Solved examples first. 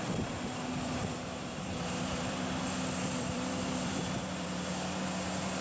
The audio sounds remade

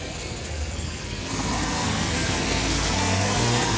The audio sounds remade